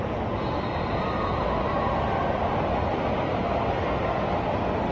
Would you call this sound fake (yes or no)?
no